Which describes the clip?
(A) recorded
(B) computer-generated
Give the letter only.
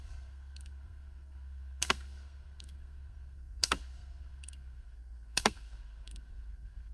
B